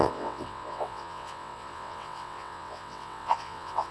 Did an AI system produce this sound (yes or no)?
yes